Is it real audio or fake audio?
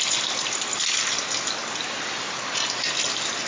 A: real